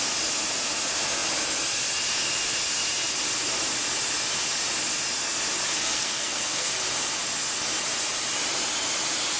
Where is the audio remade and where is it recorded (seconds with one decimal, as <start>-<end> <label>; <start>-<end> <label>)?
0.0-5.7 recorded; 5.7-6.7 remade; 6.7-9.4 recorded

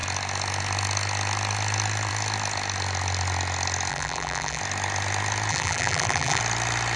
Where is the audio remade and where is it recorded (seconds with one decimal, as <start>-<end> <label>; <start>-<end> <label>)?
0.0-3.9 recorded; 3.9-4.6 remade; 4.6-5.5 recorded; 5.5-6.4 remade; 6.4-7.0 recorded